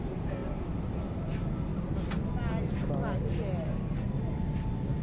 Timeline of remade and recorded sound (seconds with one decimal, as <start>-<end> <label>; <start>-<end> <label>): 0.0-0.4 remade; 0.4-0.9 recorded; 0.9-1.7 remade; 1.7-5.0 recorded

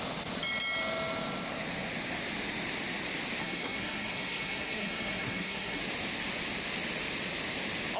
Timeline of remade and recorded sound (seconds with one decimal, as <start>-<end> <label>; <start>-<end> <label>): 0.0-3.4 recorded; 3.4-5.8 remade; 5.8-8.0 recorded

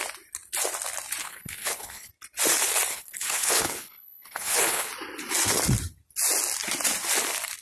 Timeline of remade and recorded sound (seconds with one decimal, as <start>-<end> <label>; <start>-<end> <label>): 0.0-1.2 recorded; 1.2-2.1 remade; 2.1-2.9 recorded; 2.9-4.9 remade; 4.9-7.6 recorded

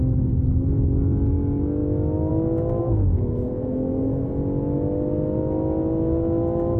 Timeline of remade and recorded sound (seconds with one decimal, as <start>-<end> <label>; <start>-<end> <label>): 0.0-2.8 recorded; 2.8-4.3 remade; 4.3-6.8 recorded

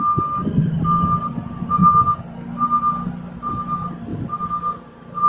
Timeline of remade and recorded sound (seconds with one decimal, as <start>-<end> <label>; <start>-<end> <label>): 0.0-5.3 recorded

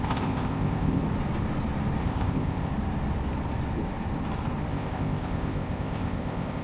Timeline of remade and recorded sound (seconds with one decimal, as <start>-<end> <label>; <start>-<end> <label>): 0.0-1.0 remade; 1.0-2.0 recorded; 2.0-2.7 remade; 2.7-4.7 recorded; 4.7-6.6 remade

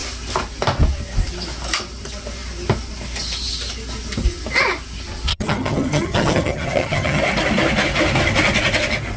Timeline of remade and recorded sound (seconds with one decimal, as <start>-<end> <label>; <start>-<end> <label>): 0.0-5.3 recorded; 5.3-7.2 remade; 7.2-9.2 recorded

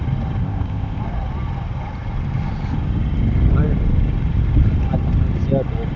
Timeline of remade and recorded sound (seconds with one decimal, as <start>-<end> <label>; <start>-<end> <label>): 0.0-0.4 recorded; 0.4-1.0 remade; 1.0-6.0 recorded